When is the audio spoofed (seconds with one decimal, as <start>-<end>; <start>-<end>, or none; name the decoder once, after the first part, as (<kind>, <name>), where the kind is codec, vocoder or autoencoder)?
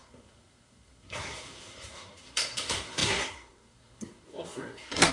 0.0-5.1 (codec, SNAC)